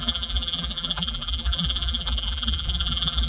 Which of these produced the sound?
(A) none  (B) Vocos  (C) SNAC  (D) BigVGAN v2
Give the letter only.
D